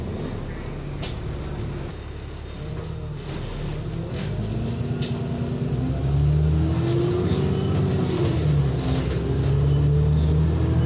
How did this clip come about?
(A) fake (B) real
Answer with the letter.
B